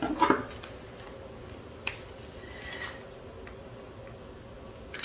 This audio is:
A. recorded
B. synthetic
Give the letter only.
A